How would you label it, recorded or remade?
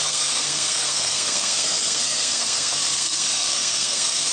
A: remade